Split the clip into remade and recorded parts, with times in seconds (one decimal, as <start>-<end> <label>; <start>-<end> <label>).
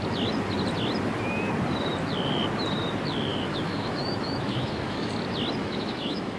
0.0-3.3 recorded; 3.3-5.1 remade; 5.1-5.6 recorded; 5.6-6.4 remade